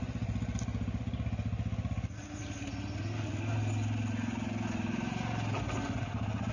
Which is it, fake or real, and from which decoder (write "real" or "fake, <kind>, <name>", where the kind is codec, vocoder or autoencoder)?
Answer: real